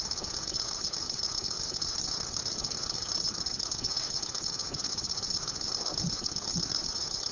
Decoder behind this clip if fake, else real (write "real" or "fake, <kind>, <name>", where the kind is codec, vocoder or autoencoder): real